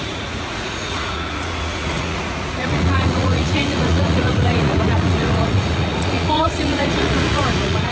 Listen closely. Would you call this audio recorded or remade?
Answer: remade